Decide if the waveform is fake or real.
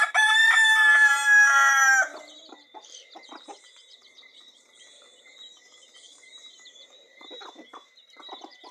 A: fake